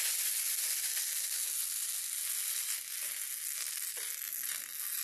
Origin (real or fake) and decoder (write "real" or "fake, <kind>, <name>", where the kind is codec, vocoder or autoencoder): real